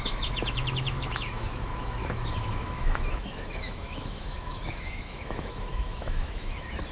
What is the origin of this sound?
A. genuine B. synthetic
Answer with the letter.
B